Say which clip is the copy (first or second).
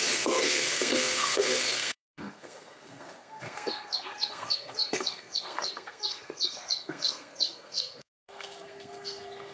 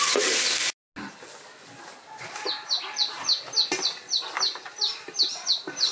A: first